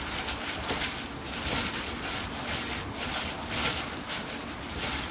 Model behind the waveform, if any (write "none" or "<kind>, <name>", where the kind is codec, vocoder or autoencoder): none